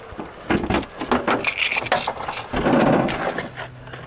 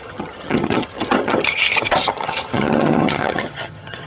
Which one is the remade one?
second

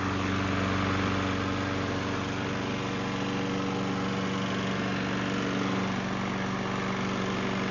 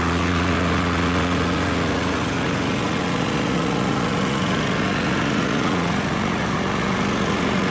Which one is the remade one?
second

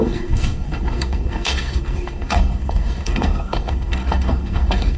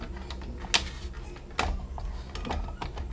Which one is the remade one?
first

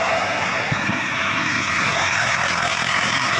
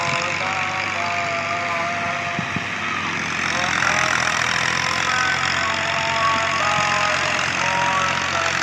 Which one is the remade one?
first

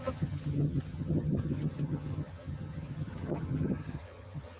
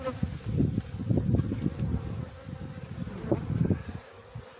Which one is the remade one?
first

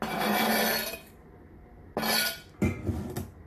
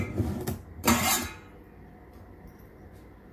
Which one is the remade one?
second